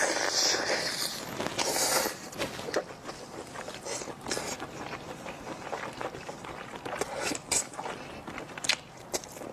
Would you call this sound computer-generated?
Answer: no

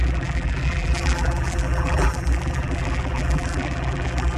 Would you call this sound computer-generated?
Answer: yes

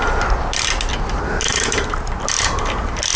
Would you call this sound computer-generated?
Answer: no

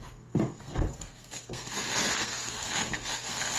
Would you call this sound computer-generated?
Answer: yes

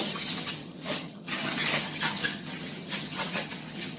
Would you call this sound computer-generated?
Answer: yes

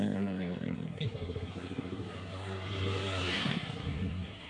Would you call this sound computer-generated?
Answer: yes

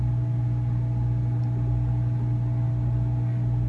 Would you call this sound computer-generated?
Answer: no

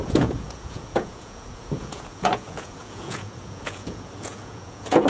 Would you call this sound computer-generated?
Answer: yes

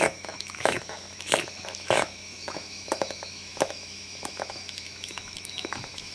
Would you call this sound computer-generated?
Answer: yes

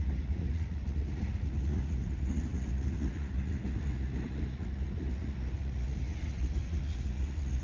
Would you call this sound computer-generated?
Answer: yes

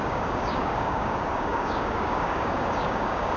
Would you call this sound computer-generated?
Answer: yes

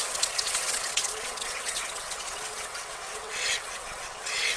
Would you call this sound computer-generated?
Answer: yes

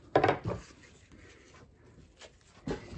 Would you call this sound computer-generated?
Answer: no